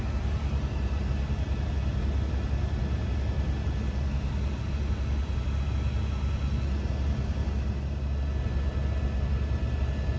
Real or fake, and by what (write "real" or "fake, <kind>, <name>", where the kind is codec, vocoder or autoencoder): real